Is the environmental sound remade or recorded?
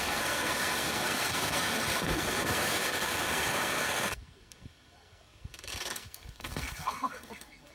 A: remade